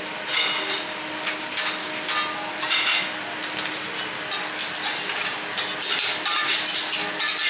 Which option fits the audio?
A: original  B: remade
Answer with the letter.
A